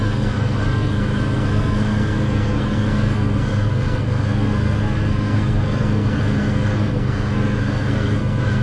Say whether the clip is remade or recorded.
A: remade